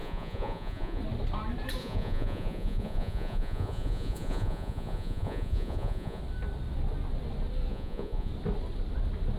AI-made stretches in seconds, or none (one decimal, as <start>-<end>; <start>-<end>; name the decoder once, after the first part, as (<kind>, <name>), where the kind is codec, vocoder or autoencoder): 0.0-1.0 (vocoder, Vocos); 1.8-6.2; 7.7-8.3